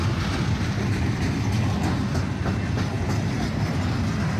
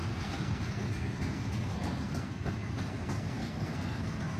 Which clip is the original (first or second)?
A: first